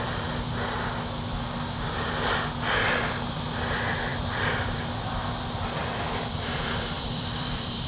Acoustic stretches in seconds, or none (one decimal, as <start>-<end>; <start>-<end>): 0.0-4.1; 5.3-5.8

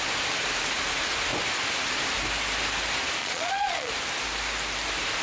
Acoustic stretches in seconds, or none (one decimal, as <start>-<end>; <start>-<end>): 0.0-3.2; 3.9-5.2